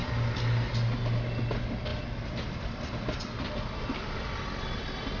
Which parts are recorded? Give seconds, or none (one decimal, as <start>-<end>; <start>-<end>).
0.0-1.9; 2.8-5.2